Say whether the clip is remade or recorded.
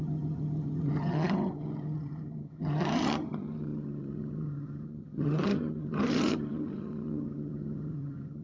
remade